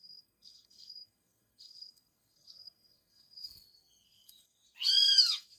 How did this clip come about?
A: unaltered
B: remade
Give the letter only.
B